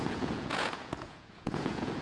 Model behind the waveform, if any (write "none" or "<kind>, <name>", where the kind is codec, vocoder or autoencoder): vocoder, Vocos